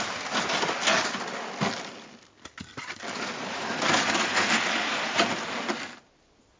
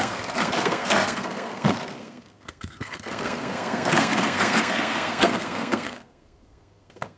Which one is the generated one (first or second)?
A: second